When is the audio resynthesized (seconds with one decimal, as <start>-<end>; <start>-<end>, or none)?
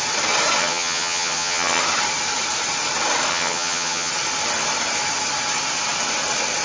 0.6-1.8; 3.3-4.1